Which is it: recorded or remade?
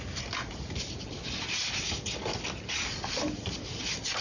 recorded